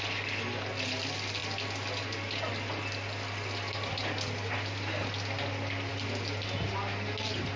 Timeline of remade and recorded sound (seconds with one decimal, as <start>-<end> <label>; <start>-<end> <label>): 0.0-7.6 recorded